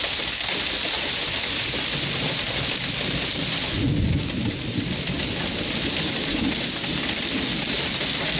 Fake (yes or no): no